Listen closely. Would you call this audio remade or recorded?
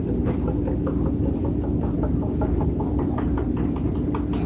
recorded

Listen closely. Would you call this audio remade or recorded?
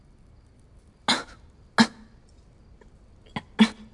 recorded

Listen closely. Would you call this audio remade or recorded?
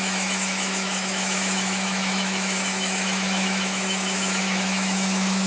remade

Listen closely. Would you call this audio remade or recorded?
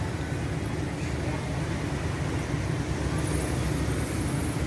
recorded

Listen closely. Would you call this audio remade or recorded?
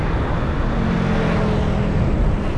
recorded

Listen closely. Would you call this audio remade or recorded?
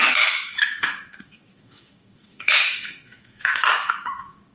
remade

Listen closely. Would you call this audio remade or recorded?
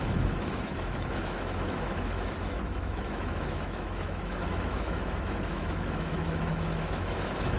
remade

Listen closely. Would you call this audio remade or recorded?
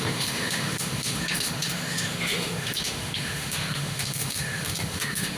remade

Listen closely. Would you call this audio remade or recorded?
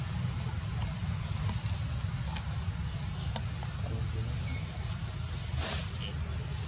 recorded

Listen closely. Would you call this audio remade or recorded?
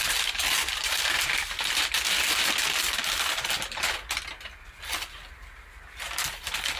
recorded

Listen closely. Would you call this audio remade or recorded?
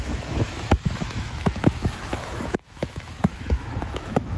remade